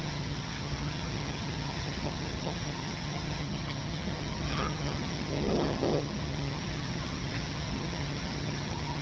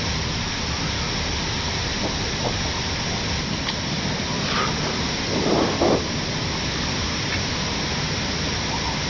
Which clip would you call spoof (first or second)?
first